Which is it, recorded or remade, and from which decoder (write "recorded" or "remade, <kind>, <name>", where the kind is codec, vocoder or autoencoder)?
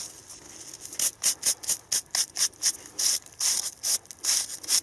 recorded